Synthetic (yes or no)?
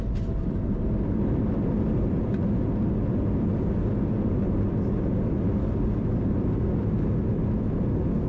no